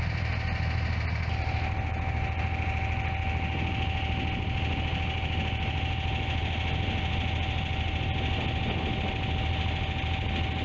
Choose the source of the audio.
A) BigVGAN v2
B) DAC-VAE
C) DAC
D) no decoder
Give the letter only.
D